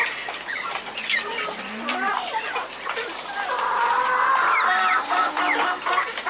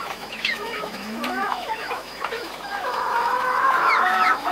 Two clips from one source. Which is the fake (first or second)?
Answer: second